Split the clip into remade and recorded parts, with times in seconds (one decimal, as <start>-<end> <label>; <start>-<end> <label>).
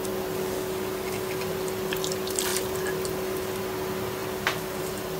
0.0-1.4 recorded; 1.4-5.2 remade